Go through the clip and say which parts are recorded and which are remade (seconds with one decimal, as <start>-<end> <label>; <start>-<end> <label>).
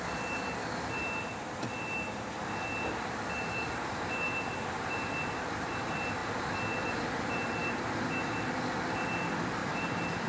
0.0-9.6 recorded; 9.6-10.3 remade